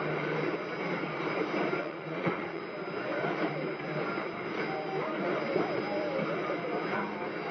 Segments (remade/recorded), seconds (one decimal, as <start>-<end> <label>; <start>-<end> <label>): 0.0-1.8 recorded; 1.8-2.6 remade; 2.6-7.5 recorded